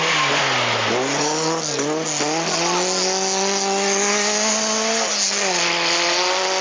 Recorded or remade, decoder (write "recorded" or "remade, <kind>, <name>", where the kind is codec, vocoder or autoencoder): recorded